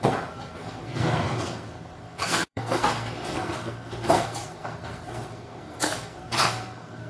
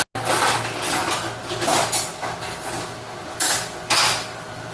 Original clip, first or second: second